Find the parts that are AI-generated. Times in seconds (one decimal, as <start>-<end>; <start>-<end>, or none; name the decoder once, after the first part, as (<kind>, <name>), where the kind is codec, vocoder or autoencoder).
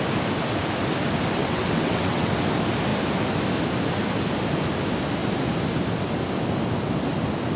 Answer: 1.4-2.3 (vocoder, WaveNeXt)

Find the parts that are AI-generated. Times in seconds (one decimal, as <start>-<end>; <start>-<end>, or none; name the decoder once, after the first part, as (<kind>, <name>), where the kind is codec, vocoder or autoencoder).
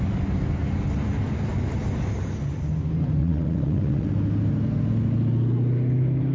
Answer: 3.2-4.1 (vocoder, WaveNeXt)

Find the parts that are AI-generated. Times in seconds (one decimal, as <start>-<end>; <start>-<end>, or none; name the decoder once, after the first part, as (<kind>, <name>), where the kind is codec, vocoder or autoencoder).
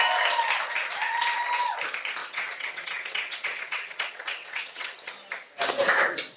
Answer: 2.2-5.1 (vocoder, WaveNeXt)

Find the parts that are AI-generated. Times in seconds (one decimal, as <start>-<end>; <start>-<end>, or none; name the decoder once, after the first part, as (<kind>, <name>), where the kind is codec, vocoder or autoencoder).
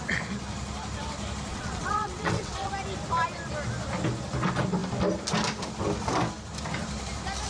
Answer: 1.5-2.7 (vocoder, WaveNeXt)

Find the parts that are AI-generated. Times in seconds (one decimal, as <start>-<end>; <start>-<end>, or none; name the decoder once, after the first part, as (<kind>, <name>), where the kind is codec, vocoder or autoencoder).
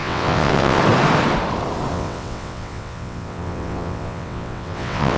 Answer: 0.0-0.8 (vocoder, WaveNeXt); 1.9-5.2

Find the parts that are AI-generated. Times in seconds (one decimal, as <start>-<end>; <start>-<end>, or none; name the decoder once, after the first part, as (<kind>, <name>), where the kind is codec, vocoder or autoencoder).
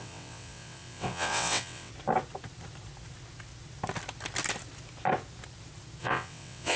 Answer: 0.0-1.9 (vocoder, WaveNeXt); 6.0-6.8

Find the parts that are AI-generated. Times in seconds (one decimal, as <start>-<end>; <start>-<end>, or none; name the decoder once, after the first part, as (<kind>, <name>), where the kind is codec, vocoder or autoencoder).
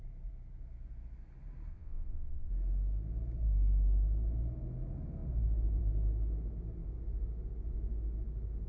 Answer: 1.7-2.5 (vocoder, WaveNeXt)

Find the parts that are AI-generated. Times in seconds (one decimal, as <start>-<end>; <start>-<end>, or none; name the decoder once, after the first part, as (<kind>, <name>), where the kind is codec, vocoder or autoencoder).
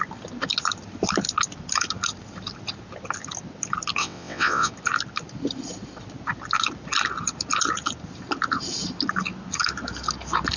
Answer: 4.0-4.7 (vocoder, WaveNeXt)